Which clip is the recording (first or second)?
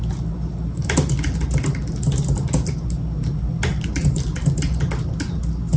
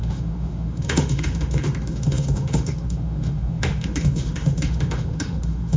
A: first